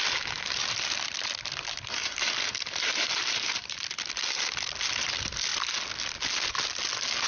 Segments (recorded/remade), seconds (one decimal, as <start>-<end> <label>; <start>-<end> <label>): 0.0-7.3 recorded